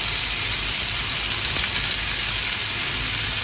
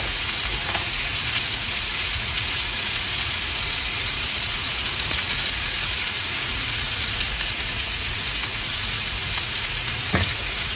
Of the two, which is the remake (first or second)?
second